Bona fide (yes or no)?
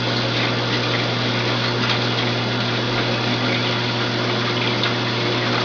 yes